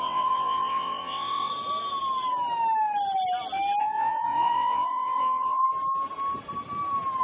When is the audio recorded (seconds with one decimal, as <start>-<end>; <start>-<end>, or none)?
1.5-3.8; 5.6-7.2